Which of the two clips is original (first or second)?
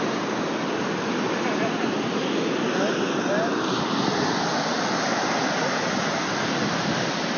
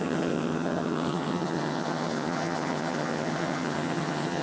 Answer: first